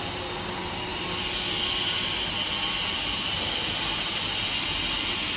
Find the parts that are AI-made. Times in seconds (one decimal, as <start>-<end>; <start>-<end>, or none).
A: none